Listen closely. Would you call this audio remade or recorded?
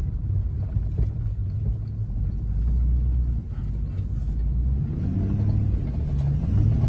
recorded